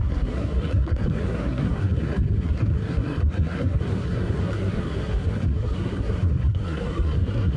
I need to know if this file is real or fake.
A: fake